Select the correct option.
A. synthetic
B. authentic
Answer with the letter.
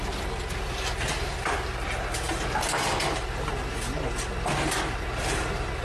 B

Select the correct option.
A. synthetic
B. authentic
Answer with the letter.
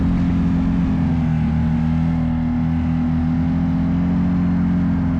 B